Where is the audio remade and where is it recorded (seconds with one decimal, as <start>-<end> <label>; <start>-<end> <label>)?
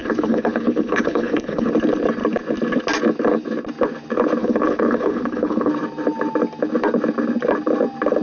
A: 0.0-1.7 remade; 1.7-4.4 recorded; 4.4-5.7 remade; 5.7-8.2 recorded